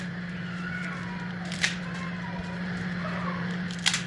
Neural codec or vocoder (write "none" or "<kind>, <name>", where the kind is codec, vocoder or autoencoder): none